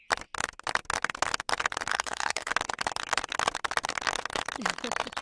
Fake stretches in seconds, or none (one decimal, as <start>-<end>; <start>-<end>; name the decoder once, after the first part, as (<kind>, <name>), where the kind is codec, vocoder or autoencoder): 1.9-2.5 (codec, SNAC)